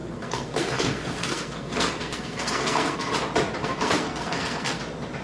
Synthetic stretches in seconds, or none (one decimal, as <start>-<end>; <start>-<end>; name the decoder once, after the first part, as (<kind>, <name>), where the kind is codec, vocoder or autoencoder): 0.0-3.1 (codec, SNAC); 3.6-4.8